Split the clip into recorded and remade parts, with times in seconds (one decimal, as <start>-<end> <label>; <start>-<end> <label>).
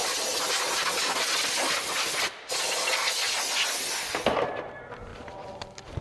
0.0-5.1 recorded; 5.1-6.0 remade